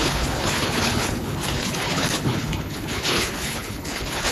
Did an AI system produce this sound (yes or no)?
yes